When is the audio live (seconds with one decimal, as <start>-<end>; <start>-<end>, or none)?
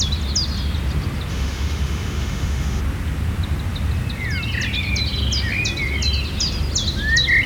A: 0.0-1.3; 2.8-7.5